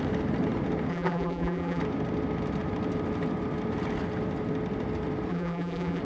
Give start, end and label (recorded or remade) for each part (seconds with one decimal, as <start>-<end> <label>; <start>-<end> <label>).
0.0-0.9 recorded; 0.9-1.8 remade; 1.8-5.3 recorded; 5.3-6.0 remade